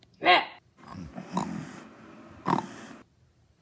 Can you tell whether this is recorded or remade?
recorded